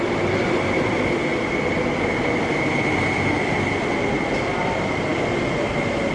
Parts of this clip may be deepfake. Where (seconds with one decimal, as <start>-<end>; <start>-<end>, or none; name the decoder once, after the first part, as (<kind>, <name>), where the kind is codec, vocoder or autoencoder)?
none